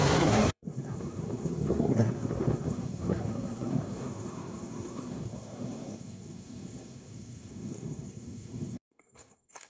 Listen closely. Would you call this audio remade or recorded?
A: remade